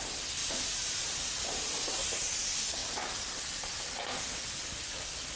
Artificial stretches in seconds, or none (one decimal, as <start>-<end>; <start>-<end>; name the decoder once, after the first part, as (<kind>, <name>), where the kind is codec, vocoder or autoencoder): 0.4-1.8 (vocoder, BigVGAN v2)